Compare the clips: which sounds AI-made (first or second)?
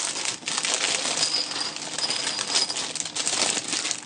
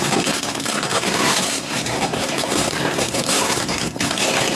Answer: second